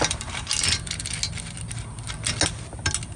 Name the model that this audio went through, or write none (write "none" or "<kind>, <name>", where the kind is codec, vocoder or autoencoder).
none